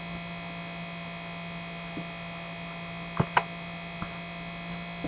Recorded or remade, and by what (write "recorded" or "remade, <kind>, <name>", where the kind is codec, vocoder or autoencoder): recorded